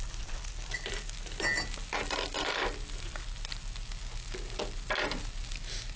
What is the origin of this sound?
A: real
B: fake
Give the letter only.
A